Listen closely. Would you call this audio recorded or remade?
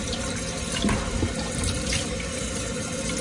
recorded